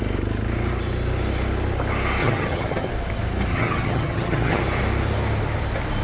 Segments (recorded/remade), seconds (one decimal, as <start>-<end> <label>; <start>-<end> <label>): 0.0-2.2 recorded; 2.2-2.9 remade; 2.9-3.5 recorded; 3.5-4.6 remade; 4.6-6.0 recorded